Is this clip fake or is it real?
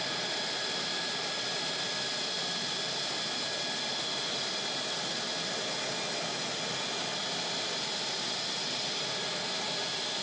real